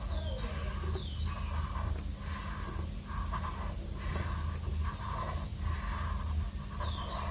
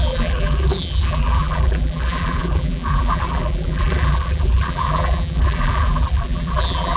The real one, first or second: first